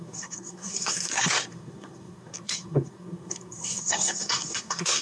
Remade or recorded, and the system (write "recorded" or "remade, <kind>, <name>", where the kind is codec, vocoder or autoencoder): remade, codec, SNAC